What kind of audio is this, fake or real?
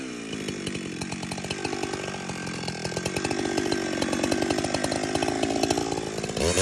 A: real